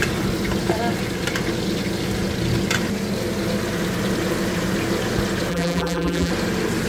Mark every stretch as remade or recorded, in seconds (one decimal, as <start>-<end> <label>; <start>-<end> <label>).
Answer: 0.0-5.5 recorded; 5.5-6.3 remade; 6.3-6.9 recorded